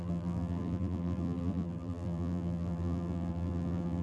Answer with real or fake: fake